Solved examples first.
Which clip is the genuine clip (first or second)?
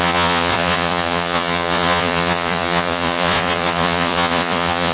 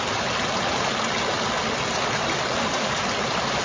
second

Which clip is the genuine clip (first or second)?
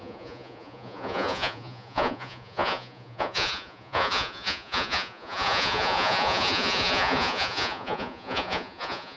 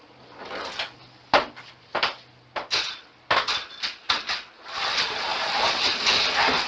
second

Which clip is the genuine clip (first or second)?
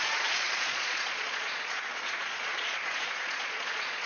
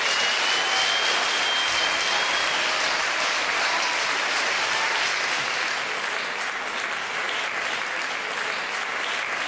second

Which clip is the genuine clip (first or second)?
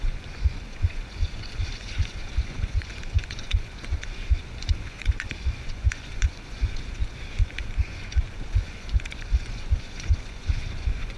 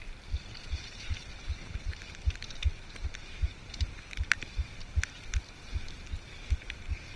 second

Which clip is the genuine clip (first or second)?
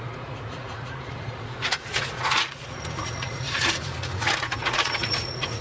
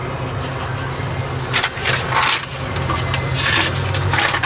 second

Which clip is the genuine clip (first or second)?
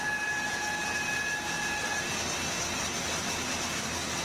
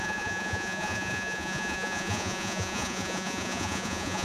first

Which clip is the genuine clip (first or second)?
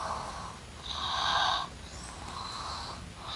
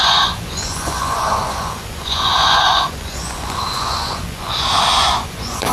first